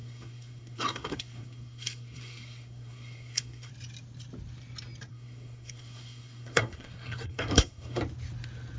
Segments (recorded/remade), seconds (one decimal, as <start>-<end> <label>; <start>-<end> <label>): 0.0-3.7 remade; 3.7-5.1 recorded; 5.1-8.0 remade; 8.0-8.8 recorded